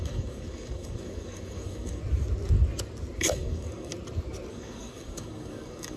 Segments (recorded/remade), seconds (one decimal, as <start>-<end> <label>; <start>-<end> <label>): 0.0-2.0 remade; 2.0-3.2 recorded; 3.2-3.9 remade; 3.9-4.5 recorded; 4.5-6.0 remade